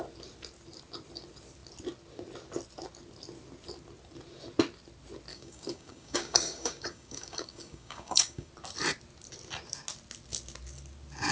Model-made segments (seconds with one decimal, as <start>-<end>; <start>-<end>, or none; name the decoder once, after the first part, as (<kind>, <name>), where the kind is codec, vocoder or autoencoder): 5.3-8.5 (codec, DAC)